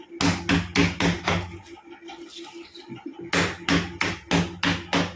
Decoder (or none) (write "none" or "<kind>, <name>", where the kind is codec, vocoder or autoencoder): none